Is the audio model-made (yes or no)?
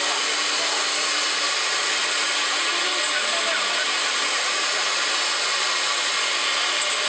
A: no